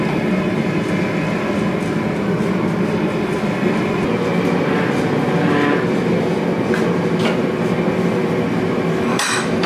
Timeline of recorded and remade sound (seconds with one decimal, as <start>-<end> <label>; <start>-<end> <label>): 0.0-9.1 recorded; 9.1-9.7 remade